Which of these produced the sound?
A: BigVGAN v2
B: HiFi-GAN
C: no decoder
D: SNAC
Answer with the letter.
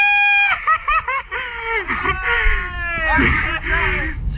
C